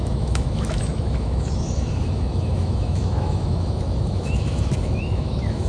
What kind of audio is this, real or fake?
fake